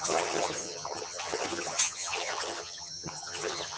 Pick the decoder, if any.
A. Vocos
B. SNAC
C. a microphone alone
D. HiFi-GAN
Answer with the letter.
D